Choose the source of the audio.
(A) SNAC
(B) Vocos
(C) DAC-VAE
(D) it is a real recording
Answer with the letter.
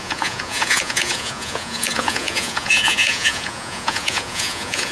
B